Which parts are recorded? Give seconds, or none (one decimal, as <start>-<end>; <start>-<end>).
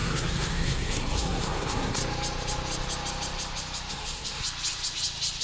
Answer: 2.0-3.9; 4.4-5.4